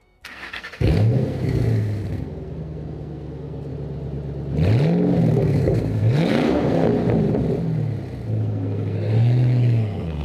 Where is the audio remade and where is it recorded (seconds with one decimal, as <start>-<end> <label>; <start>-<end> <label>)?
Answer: 0.0-3.7 remade; 3.7-5.3 recorded; 5.3-6.9 remade; 6.9-8.3 recorded; 8.3-10.2 remade